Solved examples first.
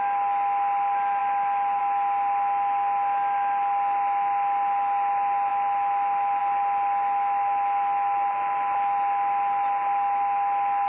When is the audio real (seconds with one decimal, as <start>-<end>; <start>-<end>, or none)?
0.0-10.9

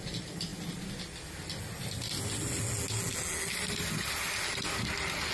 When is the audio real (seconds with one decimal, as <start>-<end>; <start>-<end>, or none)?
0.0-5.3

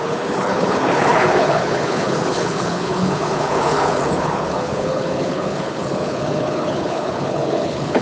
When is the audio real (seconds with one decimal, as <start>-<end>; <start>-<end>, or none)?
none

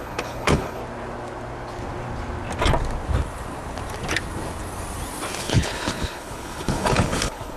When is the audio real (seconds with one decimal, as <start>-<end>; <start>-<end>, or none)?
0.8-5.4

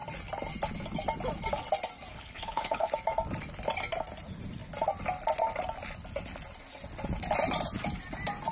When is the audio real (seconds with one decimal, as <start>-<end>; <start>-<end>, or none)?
0.0-2.1; 2.9-8.5